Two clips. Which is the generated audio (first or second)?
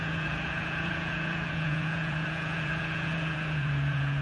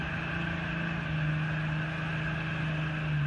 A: first